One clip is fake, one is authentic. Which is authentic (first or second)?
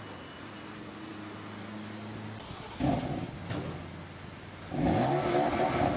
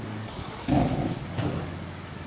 first